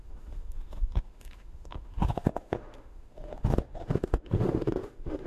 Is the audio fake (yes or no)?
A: yes